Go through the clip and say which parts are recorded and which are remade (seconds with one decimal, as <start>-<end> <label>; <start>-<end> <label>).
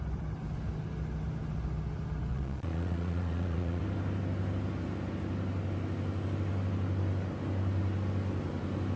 0.0-2.3 recorded; 2.3-3.8 remade; 3.8-9.0 recorded